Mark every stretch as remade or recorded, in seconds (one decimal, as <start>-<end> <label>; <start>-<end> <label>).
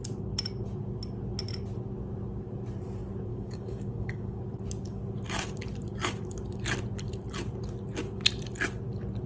0.0-3.3 recorded; 3.3-4.4 remade; 4.4-9.3 recorded